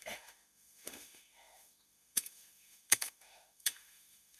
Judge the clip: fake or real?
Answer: fake